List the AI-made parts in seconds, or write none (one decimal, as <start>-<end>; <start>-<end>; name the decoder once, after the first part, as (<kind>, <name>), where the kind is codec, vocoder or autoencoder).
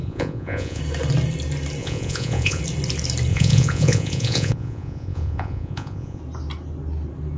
0.0-0.8 (vocoder, Vocos); 1.8-2.6; 3.3-6.2